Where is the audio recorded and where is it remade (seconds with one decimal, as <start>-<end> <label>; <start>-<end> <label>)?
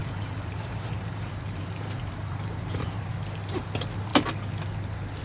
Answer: 0.0-3.1 remade; 3.1-5.2 recorded